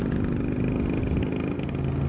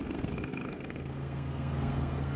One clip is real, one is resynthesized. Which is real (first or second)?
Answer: first